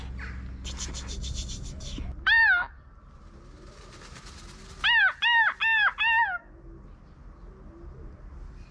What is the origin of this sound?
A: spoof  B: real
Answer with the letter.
B